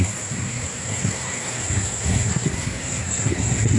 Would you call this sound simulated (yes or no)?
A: yes